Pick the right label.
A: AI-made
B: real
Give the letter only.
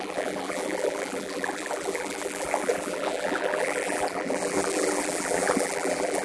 A